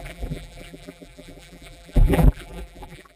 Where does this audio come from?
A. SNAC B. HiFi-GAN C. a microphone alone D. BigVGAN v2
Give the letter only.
D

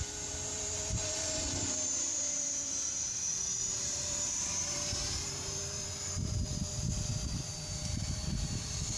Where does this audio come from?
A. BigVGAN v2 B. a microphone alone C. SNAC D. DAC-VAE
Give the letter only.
A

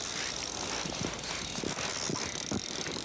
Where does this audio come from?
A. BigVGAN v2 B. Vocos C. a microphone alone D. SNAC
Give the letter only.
C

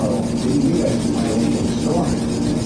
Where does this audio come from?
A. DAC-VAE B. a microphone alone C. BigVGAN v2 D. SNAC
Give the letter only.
B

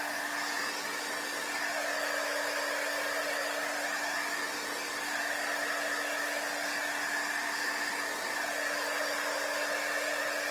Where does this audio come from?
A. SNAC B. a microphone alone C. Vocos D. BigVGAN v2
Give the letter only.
B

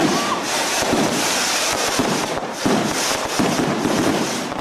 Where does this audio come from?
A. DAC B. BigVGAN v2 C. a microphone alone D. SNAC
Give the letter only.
B